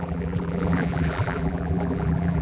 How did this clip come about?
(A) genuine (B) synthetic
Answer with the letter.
B